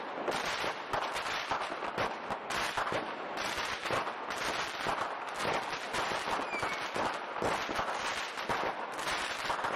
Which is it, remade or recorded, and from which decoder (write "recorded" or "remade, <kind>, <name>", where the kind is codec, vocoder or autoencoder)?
recorded